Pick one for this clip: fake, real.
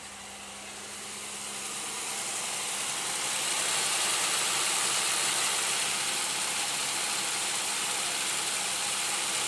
real